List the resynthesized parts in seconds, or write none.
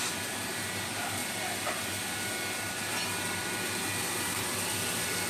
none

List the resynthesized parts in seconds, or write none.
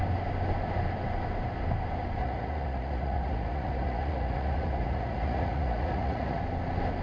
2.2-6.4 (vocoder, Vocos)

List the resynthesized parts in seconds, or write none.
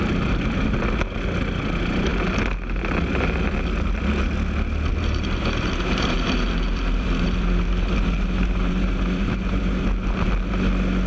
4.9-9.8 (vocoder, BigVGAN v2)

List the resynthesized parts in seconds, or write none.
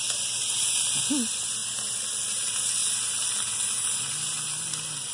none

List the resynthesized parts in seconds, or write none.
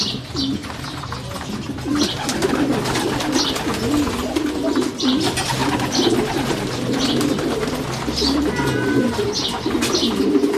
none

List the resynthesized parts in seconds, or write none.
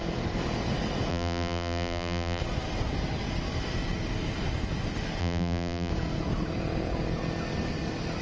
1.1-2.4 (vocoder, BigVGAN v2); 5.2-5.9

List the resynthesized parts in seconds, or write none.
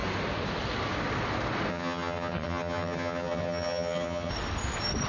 1.7-4.3 (vocoder, HiFi-GAN)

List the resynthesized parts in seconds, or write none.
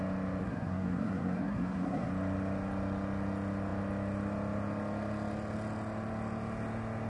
0.4-2.1 (codec, SNAC)